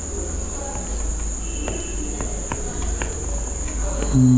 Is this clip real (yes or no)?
yes